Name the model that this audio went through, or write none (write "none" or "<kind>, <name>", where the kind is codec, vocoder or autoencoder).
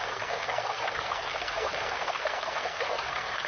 codec, SNAC